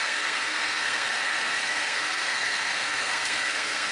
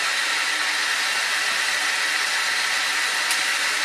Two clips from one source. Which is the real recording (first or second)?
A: second